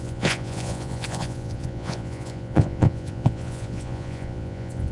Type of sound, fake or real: fake